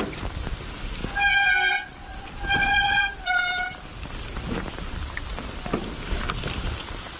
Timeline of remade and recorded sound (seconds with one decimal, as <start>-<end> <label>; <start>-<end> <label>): 0.0-1.0 remade; 1.0-1.7 recorded; 1.7-7.2 remade